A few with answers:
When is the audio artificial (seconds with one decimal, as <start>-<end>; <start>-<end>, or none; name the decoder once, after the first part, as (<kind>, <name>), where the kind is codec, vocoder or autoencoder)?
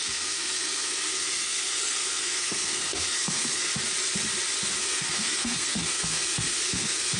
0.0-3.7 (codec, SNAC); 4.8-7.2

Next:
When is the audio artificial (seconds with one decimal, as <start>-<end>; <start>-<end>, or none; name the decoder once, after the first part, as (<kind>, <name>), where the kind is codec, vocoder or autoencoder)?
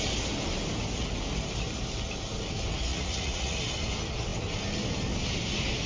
2.9-3.6 (vocoder, Vocos)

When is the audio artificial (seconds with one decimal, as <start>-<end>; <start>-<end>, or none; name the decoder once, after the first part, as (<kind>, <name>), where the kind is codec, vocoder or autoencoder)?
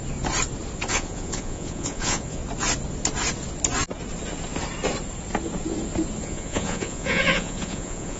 0.9-2.4 (vocoder, Vocos); 6.2-8.2